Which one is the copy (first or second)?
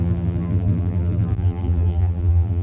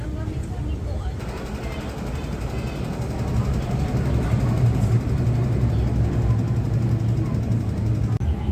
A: first